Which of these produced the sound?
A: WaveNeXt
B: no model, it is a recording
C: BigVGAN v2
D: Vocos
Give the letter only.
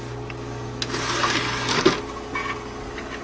B